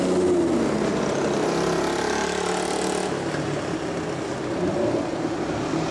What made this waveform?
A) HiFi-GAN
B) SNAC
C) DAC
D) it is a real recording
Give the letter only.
D